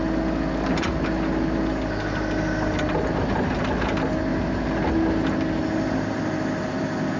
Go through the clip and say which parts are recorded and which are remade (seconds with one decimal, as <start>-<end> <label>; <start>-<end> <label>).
0.0-7.2 recorded